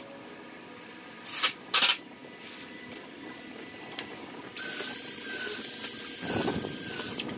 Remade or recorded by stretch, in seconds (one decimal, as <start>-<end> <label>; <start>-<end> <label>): 0.0-7.4 recorded